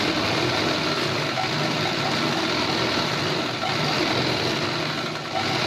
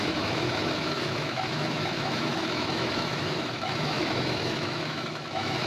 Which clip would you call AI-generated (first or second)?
second